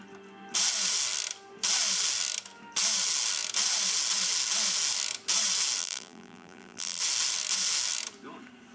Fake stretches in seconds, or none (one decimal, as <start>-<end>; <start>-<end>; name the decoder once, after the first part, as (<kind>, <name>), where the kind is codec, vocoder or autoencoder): 5.8-7.0 (vocoder, BigVGAN v2)